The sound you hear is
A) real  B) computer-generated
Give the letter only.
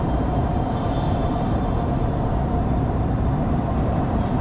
B